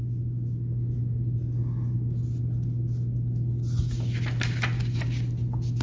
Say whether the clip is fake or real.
real